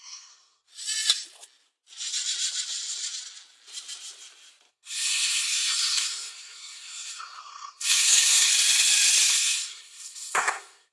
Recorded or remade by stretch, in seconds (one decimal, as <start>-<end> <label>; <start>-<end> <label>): 0.0-0.7 remade; 0.7-4.7 recorded; 4.7-8.5 remade; 8.5-9.3 recorded; 9.3-10.9 remade

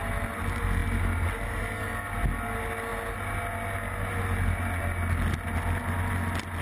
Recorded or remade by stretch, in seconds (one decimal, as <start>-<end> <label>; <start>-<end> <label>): 0.0-6.6 recorded

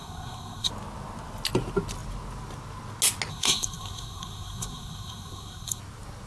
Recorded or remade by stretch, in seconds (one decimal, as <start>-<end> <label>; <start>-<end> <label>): 0.0-0.7 remade; 0.7-3.3 recorded; 3.3-5.8 remade; 5.8-6.3 recorded

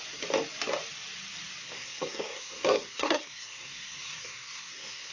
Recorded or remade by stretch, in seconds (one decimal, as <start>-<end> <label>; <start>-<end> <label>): 0.0-1.6 recorded; 1.6-5.1 remade

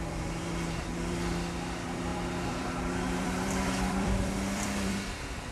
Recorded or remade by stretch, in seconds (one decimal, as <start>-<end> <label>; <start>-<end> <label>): 0.0-5.5 remade

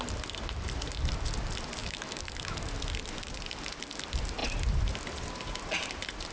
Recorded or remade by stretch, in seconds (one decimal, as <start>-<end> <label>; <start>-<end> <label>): 0.0-1.8 recorded; 1.8-2.8 remade; 2.8-6.3 recorded